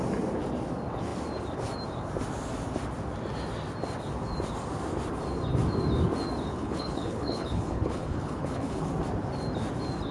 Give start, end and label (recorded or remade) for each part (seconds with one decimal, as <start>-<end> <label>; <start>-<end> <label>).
0.0-6.5 recorded; 6.5-8.9 remade; 8.9-10.1 recorded